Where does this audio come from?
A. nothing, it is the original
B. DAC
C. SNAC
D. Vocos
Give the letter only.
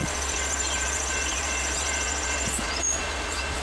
D